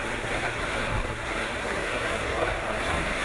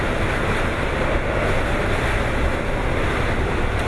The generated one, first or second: first